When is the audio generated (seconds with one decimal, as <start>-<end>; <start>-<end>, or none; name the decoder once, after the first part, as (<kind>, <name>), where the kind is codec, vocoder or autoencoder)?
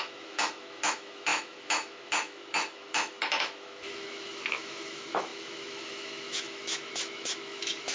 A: 0.0-7.9 (autoencoder, DAC-VAE)